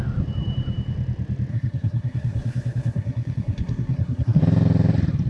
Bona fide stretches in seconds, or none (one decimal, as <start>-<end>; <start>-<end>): 0.0-1.5; 4.4-5.3